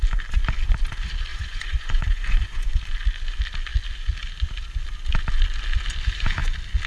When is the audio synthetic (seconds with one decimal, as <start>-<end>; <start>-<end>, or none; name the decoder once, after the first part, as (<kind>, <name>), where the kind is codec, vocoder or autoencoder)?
1.3-2.8 (vocoder, Vocos)